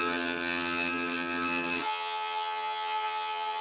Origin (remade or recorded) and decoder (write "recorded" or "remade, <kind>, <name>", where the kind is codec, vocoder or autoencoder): remade, vocoder, HiFi-GAN